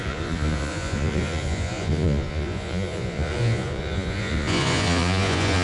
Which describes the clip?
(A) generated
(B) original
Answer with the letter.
A